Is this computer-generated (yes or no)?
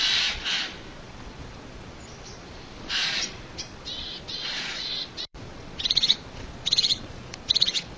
yes